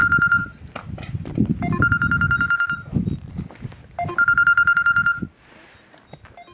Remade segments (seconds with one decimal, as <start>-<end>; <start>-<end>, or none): none